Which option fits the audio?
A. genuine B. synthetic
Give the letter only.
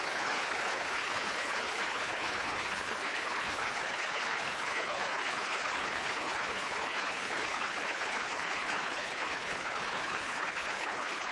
B